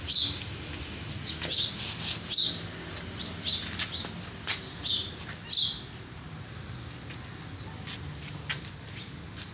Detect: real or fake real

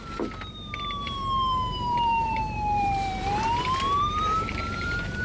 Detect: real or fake fake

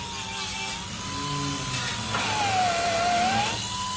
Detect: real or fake real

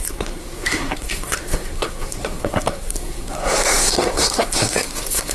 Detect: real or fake fake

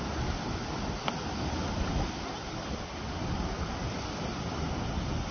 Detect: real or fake real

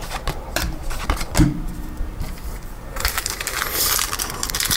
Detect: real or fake fake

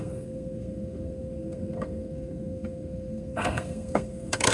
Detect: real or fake fake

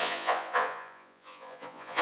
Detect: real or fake fake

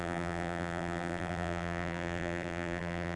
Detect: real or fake fake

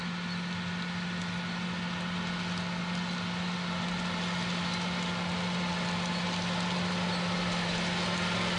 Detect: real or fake real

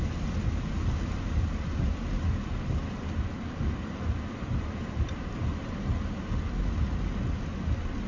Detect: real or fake real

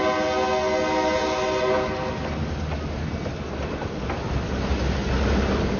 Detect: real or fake real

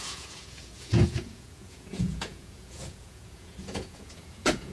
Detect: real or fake fake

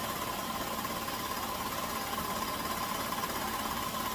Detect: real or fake real